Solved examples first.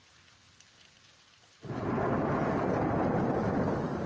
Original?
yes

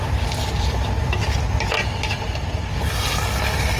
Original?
yes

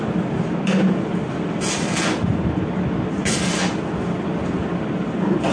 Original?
yes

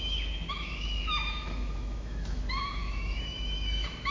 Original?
no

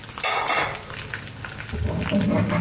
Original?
yes